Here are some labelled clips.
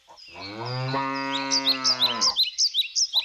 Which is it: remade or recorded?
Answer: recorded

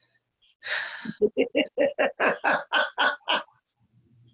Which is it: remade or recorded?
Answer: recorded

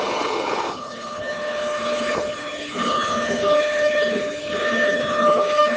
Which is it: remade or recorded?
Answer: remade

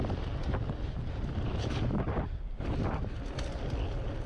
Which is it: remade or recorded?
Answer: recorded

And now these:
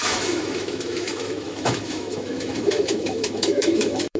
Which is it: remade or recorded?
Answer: remade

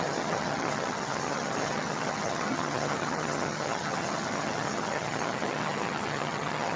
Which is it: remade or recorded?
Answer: remade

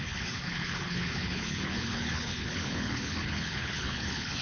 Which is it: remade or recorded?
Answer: remade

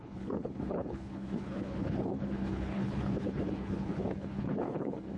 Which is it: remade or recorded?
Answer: remade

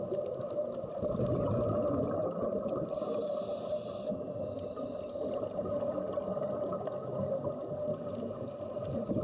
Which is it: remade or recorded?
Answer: recorded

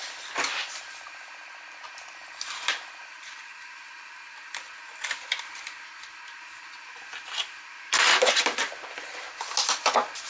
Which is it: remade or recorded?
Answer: recorded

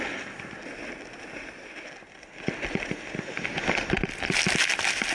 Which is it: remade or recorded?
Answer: recorded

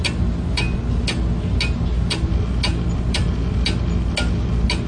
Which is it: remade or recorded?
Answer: recorded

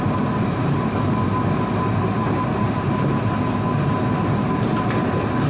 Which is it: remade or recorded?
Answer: recorded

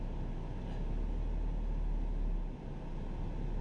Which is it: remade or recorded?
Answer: recorded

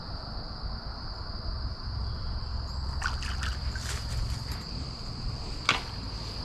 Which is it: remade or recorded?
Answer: recorded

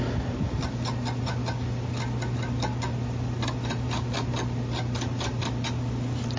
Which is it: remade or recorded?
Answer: recorded